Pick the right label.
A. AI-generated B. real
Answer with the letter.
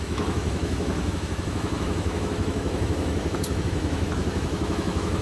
A